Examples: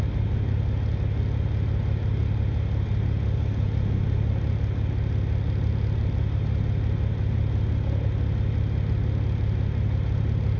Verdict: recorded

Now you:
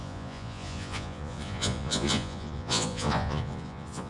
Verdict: remade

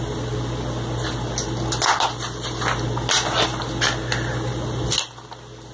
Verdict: recorded